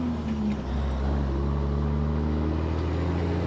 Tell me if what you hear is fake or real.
real